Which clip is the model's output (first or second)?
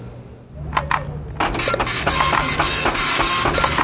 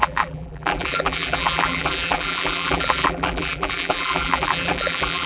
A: second